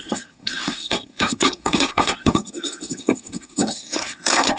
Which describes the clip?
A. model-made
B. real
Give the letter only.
A